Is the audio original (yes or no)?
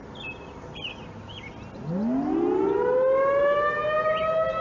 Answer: yes